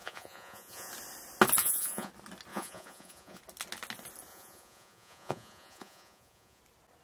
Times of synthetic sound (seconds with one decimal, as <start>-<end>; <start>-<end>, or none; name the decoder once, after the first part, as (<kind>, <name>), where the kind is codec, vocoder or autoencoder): 0.0-0.9 (vocoder, Vocos); 1.6-2.1; 2.5-3.4; 4.3-6.6